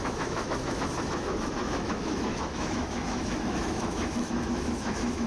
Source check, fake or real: fake